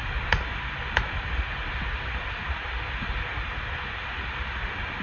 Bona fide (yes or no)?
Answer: yes